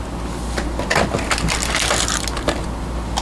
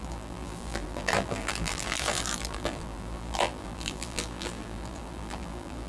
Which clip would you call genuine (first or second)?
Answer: first